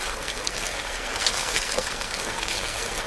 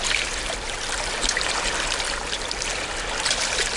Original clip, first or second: second